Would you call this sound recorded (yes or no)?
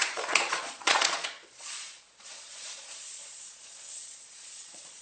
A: no